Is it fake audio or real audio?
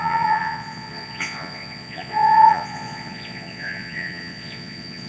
fake